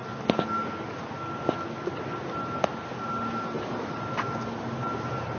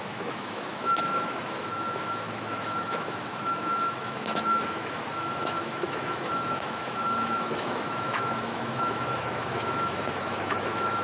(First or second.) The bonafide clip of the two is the first